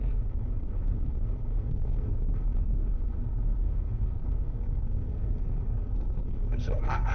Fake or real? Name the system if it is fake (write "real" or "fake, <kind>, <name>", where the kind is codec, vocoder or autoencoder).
fake, codec, SNAC